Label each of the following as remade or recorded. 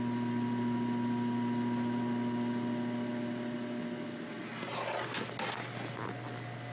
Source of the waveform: recorded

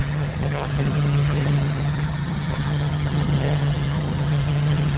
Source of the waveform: remade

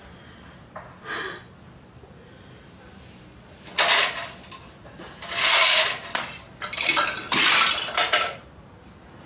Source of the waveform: recorded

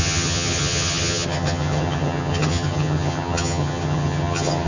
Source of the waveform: remade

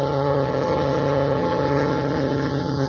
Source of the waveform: remade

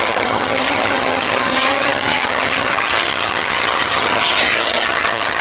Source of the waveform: remade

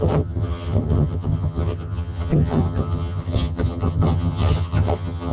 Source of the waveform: remade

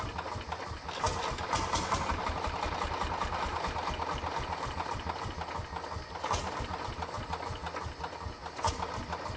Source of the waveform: recorded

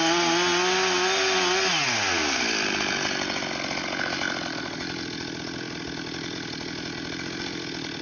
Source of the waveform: recorded